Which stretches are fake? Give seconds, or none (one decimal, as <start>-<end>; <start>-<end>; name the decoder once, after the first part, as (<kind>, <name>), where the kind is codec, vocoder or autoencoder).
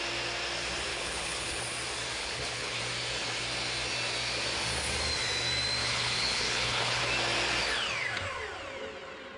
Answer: 0.9-1.6 (codec, HILCodec); 2.2-2.8; 5.8-7.0